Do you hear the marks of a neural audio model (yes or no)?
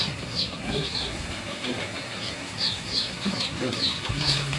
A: yes